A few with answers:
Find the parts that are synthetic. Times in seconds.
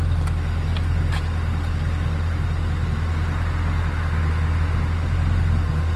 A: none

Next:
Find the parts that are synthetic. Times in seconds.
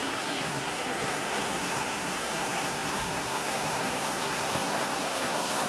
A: 0.0-5.7 (codec, SNAC)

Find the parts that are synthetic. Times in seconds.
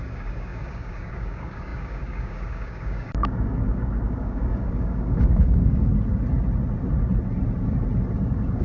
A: 0.0-5.9 (codec, DAC)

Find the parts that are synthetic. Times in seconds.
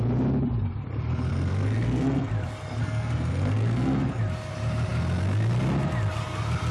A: 1.3-2.3 (codec, SNAC); 2.8-4.2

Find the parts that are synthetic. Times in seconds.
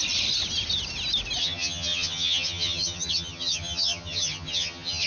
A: 1.4-5.1 (vocoder, HiFi-GAN)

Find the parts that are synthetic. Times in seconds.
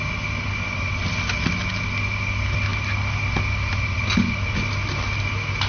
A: none